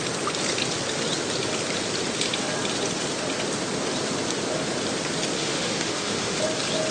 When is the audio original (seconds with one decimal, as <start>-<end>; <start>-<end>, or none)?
0.0-5.4; 6.4-6.9